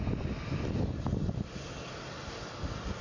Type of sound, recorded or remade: recorded